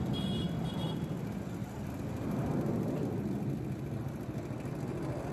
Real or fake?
real